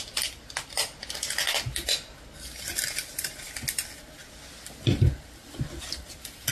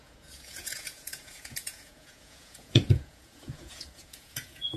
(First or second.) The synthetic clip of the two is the second